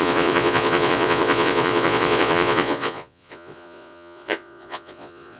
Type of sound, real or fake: fake